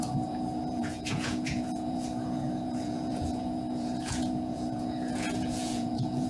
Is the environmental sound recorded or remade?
remade